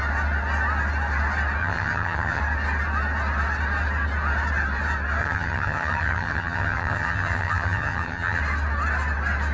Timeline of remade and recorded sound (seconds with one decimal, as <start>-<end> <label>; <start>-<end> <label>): 0.0-1.6 recorded; 1.6-2.4 remade; 2.4-5.2 recorded; 5.2-8.4 remade; 8.4-9.5 recorded